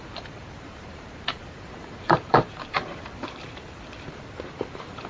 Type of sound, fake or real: fake